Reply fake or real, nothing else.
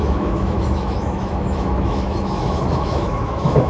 fake